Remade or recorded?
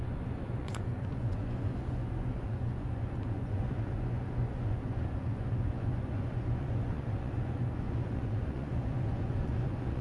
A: remade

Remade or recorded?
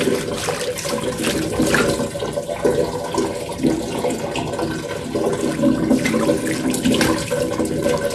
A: recorded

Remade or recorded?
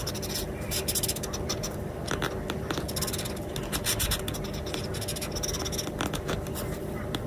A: recorded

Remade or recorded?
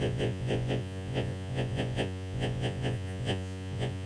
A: remade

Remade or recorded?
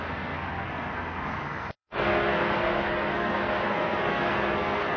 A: remade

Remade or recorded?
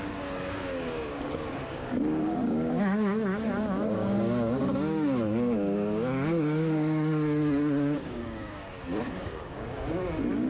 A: remade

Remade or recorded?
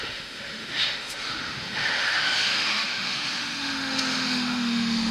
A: remade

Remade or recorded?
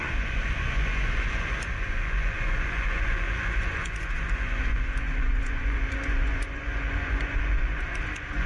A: remade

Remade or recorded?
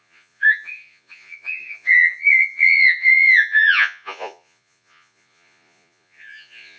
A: remade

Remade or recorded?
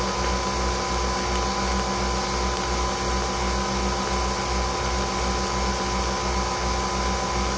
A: recorded